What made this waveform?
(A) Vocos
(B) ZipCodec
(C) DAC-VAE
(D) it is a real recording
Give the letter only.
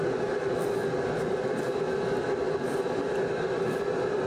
D